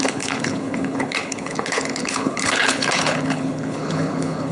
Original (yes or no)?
no